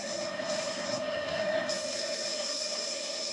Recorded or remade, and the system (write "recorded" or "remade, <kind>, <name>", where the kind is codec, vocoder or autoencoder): remade, codec, SNAC